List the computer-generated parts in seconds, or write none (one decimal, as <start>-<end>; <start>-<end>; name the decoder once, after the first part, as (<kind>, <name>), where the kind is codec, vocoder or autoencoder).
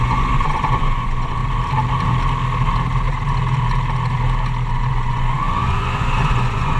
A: 0.0-1.4 (vocoder, Vocos); 4.7-6.8